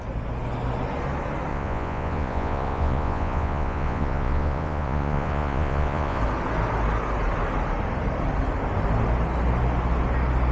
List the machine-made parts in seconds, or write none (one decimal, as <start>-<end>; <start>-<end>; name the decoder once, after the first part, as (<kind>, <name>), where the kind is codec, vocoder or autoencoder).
1.5-6.2 (vocoder, Vocos)